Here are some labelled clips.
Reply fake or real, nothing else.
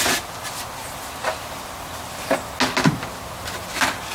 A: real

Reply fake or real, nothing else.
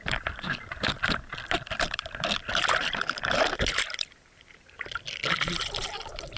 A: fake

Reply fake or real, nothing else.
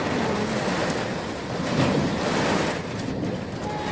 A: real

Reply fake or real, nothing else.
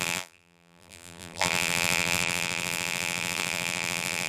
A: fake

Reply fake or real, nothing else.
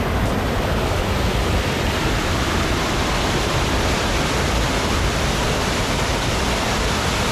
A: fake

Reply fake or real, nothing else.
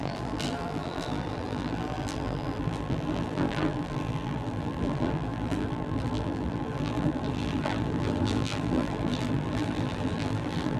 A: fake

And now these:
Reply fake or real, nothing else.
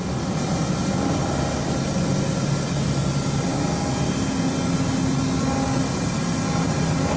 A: real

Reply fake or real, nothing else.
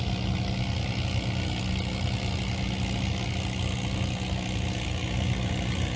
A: real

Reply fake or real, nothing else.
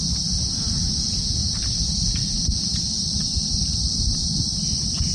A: real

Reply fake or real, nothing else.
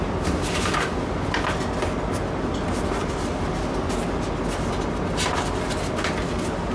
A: real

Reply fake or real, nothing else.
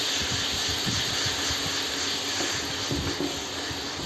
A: real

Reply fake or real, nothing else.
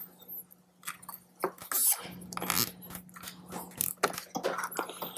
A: real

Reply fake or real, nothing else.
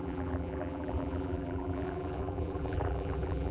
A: fake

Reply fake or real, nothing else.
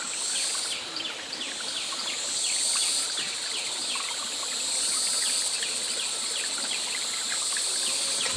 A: real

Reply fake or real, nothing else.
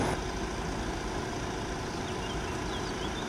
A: real